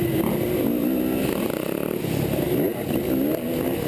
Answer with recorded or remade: recorded